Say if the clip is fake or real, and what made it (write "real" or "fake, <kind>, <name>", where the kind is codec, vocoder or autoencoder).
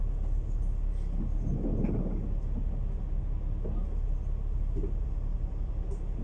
real